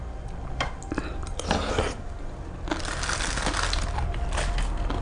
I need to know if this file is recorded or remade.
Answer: recorded